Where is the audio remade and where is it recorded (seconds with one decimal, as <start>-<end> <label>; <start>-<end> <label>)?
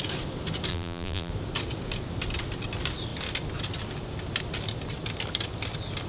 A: 0.0-0.7 recorded; 0.7-1.3 remade; 1.3-6.1 recorded